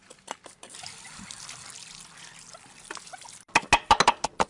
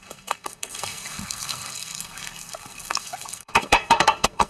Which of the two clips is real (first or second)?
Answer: first